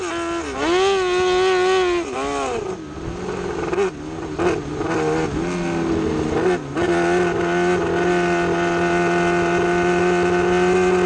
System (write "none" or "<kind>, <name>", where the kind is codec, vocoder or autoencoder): none